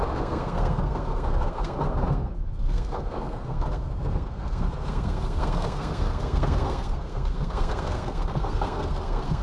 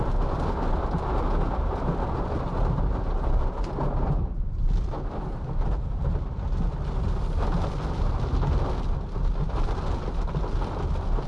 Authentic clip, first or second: second